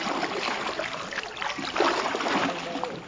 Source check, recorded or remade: recorded